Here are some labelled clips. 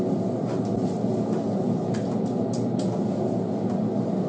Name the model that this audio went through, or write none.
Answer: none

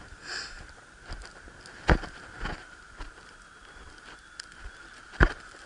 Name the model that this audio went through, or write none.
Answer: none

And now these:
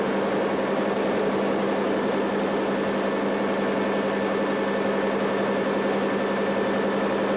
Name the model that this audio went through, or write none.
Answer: none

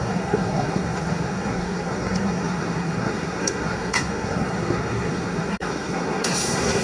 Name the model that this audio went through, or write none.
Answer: codec, SNAC